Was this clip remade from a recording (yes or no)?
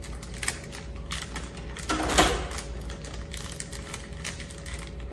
no